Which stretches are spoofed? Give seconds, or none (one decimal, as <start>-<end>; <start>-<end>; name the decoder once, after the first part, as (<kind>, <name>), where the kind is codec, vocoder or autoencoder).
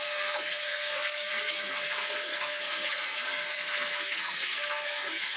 0.0-5.4 (codec, SNAC)